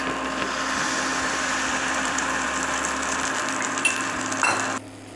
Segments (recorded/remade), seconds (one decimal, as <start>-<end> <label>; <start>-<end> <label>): 0.0-1.1 recorded; 1.1-4.2 remade; 4.2-5.2 recorded